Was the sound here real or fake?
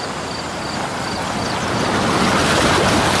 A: real